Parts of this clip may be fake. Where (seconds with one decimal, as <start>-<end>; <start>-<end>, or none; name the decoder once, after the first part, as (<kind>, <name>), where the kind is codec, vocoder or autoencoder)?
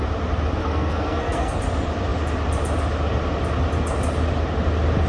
0.6-1.6 (codec, SNAC)